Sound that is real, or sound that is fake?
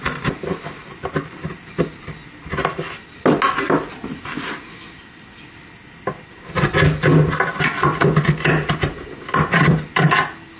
real